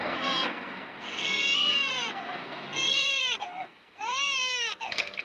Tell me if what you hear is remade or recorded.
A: remade